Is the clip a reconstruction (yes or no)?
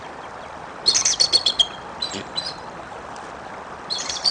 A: no